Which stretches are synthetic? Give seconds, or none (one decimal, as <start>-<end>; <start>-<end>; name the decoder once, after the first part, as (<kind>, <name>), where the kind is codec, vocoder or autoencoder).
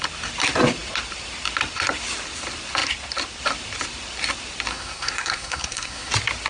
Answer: 4.7-6.1 (codec, SNAC)